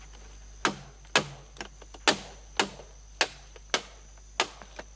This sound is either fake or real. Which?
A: real